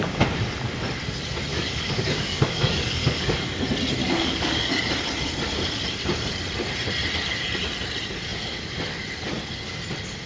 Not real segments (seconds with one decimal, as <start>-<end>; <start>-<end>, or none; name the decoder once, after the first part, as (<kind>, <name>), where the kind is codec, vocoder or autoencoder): 1.5-3.6 (codec, DAC); 4.0-4.9